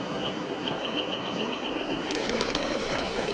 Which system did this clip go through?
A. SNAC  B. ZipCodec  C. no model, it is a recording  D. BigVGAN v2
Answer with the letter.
A